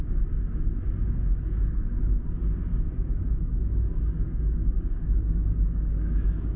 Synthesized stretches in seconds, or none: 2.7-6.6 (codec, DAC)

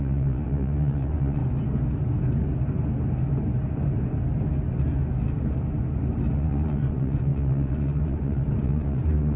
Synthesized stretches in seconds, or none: 0.0-1.4 (vocoder, Vocos); 6.3-9.4

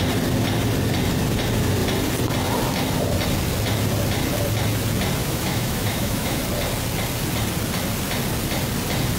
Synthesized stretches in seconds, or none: 5.2-6.4 (autoencoder, DAC-VAE)

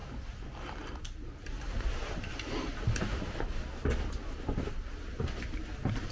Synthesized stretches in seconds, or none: none

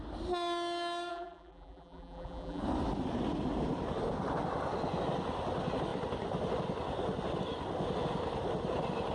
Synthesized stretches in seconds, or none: 1.1-2.6 (vocoder, BigVGAN v2)

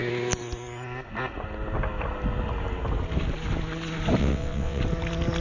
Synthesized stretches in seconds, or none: 4.2-4.8 (vocoder, WaveNeXt)